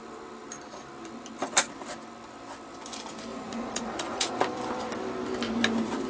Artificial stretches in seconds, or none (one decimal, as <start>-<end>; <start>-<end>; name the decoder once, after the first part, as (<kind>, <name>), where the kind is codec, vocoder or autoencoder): 3.3-4.4 (vocoder, Vocos)